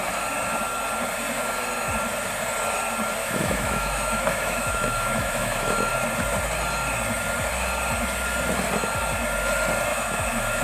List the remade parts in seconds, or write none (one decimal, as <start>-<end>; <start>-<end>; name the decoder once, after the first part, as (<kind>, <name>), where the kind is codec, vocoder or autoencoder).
3.2-5.9 (autoencoder, DAC-VAE); 9.9-10.6